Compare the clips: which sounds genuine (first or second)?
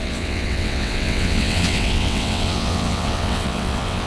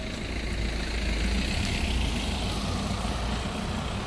second